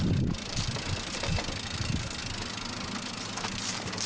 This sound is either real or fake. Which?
real